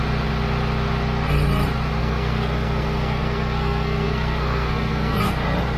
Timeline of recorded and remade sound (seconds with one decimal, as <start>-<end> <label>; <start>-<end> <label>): 0.0-2.0 recorded; 2.0-5.2 remade; 5.2-5.8 recorded